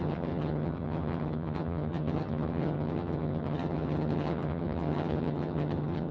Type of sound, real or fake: fake